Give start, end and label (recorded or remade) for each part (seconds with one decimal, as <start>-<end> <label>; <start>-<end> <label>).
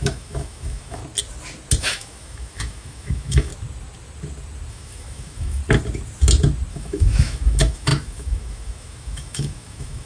0.0-1.0 remade; 1.0-1.8 recorded; 1.8-3.5 remade; 3.5-4.7 recorded; 4.7-5.6 remade; 5.6-6.7 recorded; 6.7-10.1 remade